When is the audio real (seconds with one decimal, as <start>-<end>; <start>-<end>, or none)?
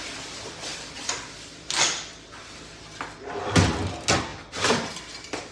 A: 0.0-0.7; 2.7-4.3; 5.0-5.5